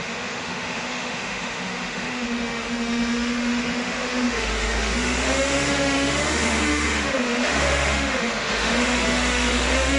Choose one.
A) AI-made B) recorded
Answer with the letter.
A